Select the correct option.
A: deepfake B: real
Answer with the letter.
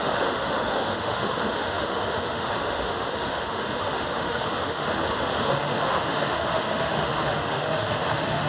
A